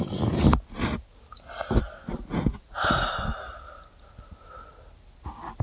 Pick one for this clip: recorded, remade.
recorded